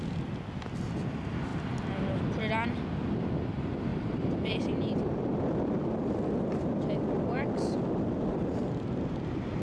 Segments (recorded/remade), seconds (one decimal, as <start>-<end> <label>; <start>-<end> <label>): 0.0-3.9 recorded; 3.9-7.9 remade; 7.9-9.6 recorded